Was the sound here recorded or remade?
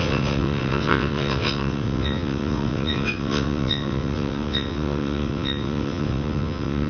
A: remade